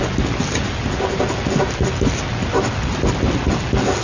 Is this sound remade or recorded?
recorded